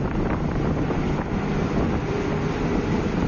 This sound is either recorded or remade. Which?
recorded